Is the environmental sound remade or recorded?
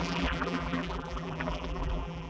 remade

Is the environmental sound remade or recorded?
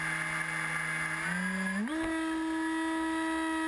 recorded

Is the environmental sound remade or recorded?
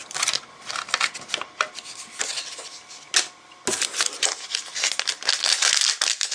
recorded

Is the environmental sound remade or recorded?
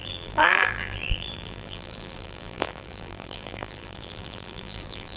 remade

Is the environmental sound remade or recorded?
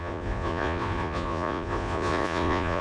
remade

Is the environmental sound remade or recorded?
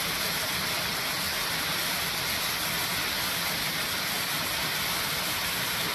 recorded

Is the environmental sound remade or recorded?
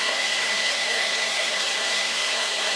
remade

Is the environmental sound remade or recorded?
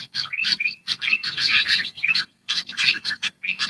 remade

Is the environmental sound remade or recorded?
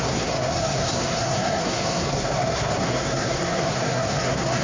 remade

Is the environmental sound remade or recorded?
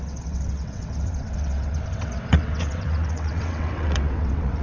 remade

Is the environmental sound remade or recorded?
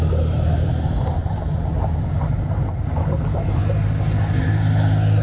recorded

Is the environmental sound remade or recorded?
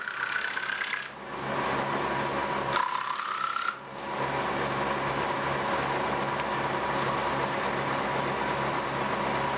recorded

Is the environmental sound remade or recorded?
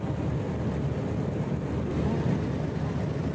recorded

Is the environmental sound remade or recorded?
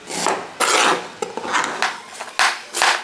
recorded